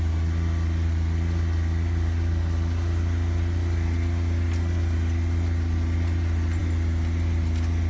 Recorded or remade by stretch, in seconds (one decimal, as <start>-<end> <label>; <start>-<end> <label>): 0.0-7.9 recorded